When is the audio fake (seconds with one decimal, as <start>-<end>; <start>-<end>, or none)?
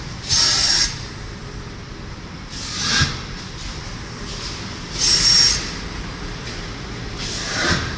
0.0-1.4; 2.4-8.0